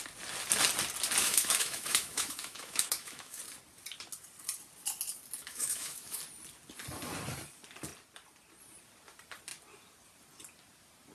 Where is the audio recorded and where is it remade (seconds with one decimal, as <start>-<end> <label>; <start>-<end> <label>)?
0.0-1.2 recorded; 1.2-3.4 remade; 3.4-5.4 recorded; 5.4-6.2 remade; 6.2-11.1 recorded